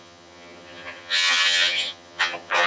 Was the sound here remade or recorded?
remade